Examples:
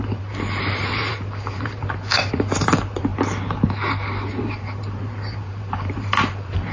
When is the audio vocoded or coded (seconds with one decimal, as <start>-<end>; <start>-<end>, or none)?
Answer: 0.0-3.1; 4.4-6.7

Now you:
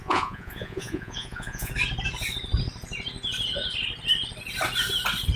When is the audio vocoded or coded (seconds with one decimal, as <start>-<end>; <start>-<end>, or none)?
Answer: 0.0-1.7

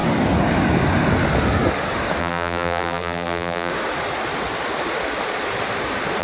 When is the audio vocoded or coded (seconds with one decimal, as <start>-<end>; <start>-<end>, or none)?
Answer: 2.2-3.7